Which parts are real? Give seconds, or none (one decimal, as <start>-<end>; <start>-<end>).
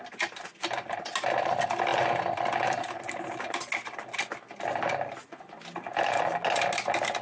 0.0-7.2